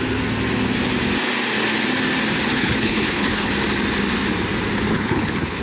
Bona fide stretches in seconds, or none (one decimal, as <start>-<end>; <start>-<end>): 0.0-2.5; 3.5-4.9